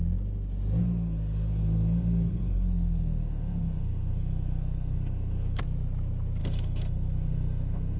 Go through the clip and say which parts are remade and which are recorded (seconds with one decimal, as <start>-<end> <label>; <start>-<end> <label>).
0.0-0.8 recorded; 0.8-5.6 remade; 5.6-6.4 recorded; 6.4-8.0 remade